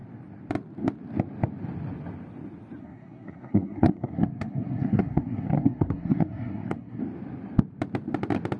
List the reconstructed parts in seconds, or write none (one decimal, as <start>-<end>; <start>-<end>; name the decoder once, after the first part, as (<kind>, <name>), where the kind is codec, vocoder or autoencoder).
2.8-7.0 (codec, SNAC)